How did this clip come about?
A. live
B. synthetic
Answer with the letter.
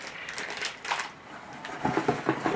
A